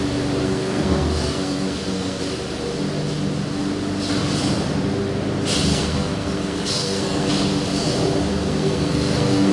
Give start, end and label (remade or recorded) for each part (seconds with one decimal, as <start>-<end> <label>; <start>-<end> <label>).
0.0-0.4 recorded; 0.4-2.2 remade; 2.2-5.7 recorded; 5.7-7.3 remade; 7.3-8.3 recorded; 8.3-9.5 remade